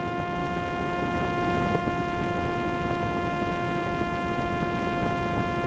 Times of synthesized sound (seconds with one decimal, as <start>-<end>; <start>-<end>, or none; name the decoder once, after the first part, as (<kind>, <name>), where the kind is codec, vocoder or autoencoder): none